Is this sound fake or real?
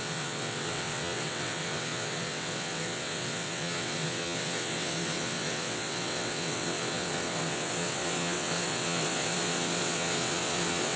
fake